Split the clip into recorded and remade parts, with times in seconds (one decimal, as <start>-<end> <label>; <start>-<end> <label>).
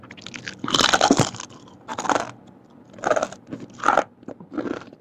0.0-5.0 recorded